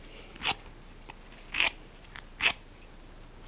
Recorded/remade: recorded